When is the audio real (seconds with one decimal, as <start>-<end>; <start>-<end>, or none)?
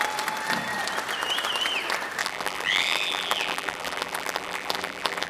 0.0-2.2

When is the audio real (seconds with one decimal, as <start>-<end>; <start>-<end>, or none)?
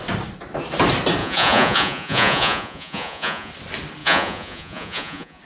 0.0-1.2; 3.5-4.0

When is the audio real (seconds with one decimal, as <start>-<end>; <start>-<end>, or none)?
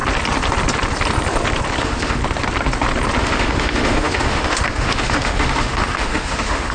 0.0-1.8; 2.2-3.2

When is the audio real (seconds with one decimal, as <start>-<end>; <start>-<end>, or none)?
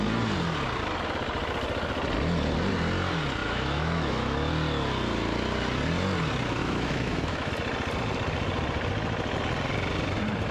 0.0-3.4; 4.5-6.6; 7.5-10.5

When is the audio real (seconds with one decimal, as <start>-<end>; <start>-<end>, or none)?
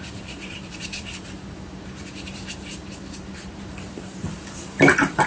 none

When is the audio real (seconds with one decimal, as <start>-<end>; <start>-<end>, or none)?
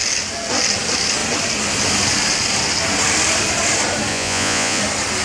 0.0-4.1; 4.8-5.2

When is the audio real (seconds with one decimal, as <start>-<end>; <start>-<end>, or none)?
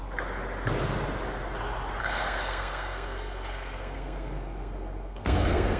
0.0-2.0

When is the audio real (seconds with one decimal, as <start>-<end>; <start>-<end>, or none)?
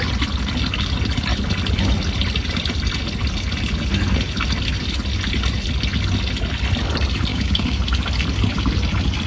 0.0-7.3; 7.8-9.3